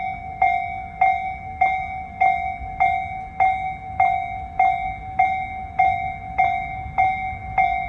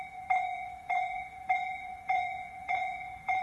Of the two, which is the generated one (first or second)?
second